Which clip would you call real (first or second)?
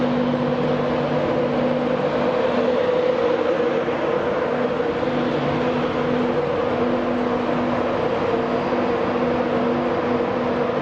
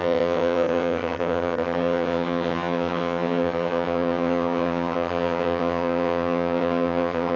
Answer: first